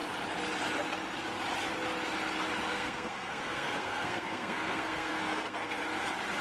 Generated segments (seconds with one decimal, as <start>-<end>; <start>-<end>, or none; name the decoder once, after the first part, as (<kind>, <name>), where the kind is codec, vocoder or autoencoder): 2.7-5.8 (codec, SNAC)